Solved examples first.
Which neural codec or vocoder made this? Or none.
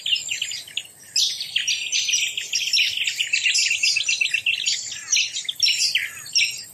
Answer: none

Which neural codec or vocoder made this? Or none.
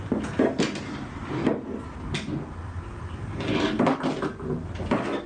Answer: none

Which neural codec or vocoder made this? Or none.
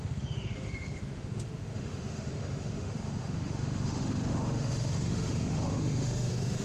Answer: autoencoder, DAC-VAE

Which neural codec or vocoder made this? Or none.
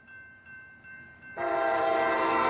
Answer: vocoder, BigVGAN v2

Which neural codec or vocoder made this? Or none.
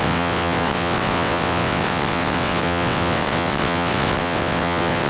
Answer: vocoder, WaveNeXt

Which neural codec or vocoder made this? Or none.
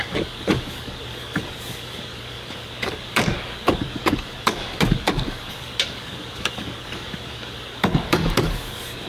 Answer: codec, DAC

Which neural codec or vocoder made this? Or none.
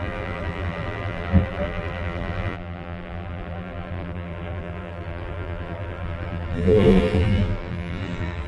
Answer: vocoder, BigVGAN v2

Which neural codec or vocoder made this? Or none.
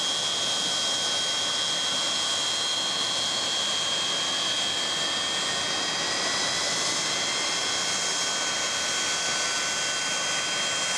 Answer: none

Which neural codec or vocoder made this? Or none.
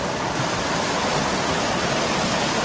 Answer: none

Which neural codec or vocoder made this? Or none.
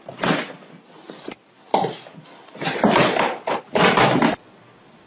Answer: none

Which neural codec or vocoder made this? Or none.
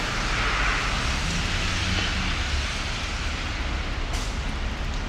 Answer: none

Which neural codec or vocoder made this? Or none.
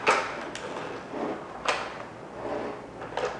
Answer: none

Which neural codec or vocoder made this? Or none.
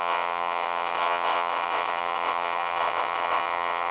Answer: vocoder, WaveNeXt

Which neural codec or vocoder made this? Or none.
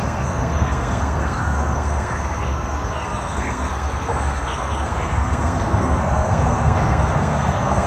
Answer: codec, SNAC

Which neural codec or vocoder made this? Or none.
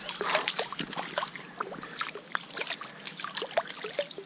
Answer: none